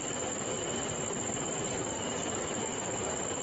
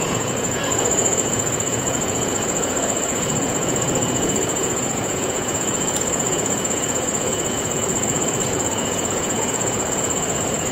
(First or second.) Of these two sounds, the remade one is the second